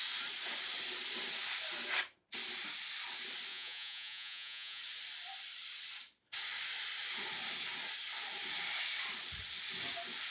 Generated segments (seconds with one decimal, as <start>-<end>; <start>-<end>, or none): 3.5-4.8